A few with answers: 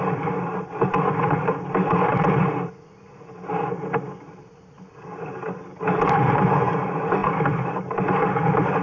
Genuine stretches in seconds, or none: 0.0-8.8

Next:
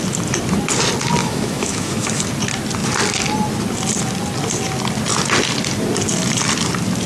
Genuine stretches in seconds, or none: 0.0-1.2; 2.2-7.1